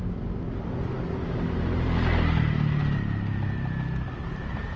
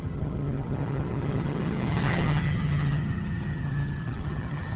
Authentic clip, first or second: first